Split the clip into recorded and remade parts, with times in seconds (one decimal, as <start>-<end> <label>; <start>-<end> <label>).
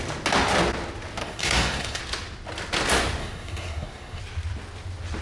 0.0-1.2 recorded; 1.2-2.0 remade; 2.0-3.2 recorded; 3.2-4.2 remade; 4.2-5.2 recorded